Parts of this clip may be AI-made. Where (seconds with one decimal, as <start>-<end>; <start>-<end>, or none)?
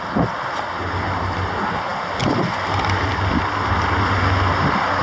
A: none